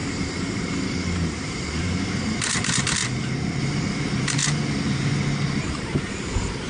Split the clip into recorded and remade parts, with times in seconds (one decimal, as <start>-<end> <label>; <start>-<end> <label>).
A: 0.0-3.0 remade; 3.0-3.6 recorded; 3.6-4.4 remade; 4.4-5.6 recorded; 5.6-6.7 remade